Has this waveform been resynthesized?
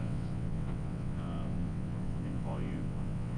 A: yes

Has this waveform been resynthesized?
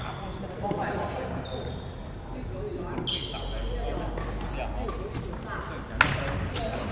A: no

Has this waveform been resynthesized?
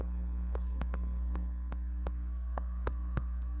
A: yes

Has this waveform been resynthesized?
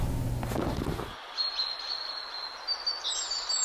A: no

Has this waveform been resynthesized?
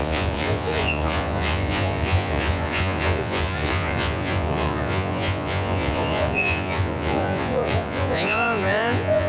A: yes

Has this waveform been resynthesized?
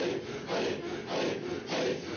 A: no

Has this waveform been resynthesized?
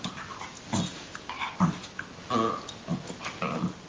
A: no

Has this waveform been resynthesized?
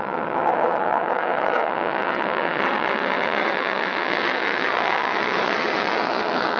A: yes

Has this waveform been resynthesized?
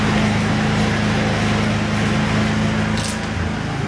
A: no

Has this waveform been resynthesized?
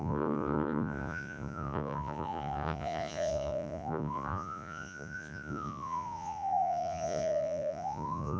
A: yes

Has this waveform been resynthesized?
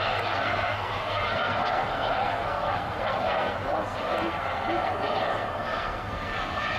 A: yes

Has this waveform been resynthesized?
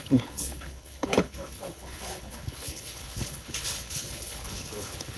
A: yes